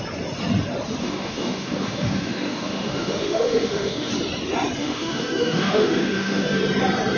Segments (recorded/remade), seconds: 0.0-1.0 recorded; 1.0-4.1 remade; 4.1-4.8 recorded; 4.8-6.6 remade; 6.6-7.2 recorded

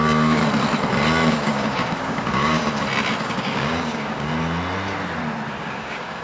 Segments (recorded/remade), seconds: 0.0-0.4 remade; 0.4-1.3 recorded; 1.3-2.6 remade; 2.6-3.2 recorded; 3.2-4.3 remade; 4.3-5.6 recorded; 5.6-6.2 remade

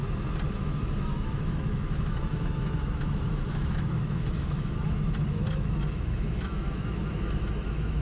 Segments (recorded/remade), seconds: 0.0-0.5 recorded; 0.5-8.0 remade

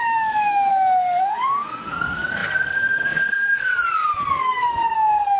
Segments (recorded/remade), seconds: 0.0-0.7 remade; 0.7-1.2 recorded; 1.2-3.7 remade; 3.7-4.3 recorded; 4.3-5.4 remade

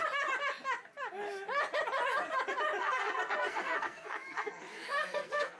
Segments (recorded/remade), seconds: 0.0-2.8 recorded; 2.8-5.6 remade

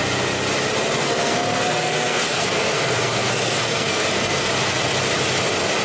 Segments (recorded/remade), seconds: 0.0-1.0 recorded; 1.0-4.5 remade; 4.5-5.8 recorded